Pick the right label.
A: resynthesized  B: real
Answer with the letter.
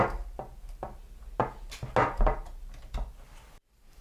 B